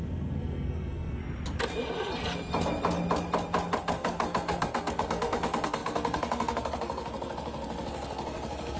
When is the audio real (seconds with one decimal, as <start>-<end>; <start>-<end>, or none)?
1.2-3.8